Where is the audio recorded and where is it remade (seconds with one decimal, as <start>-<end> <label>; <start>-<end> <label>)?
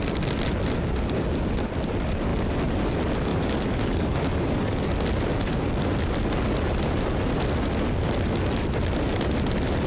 0.0-3.3 recorded; 3.3-4.9 remade; 4.9-9.9 recorded